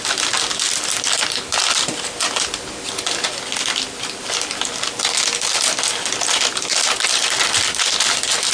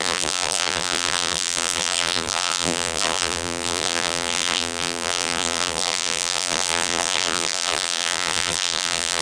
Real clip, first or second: first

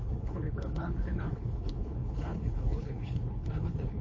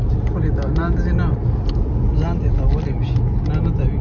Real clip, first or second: second